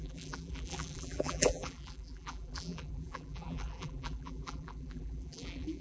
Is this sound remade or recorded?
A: remade